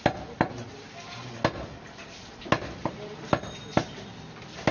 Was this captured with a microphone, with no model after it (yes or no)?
yes